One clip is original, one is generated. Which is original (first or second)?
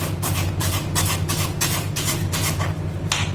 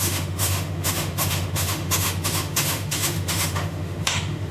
first